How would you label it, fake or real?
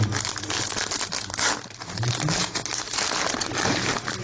real